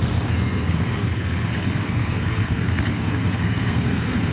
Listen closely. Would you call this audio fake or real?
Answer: fake